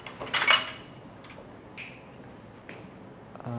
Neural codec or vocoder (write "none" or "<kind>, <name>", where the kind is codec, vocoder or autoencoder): none